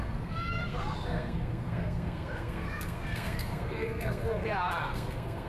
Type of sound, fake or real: fake